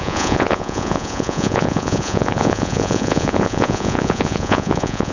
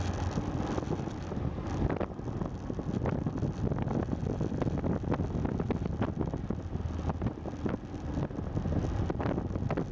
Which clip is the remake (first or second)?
first